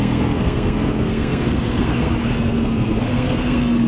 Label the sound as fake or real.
fake